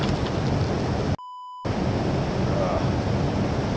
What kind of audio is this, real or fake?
real